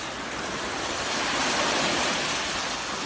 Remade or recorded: recorded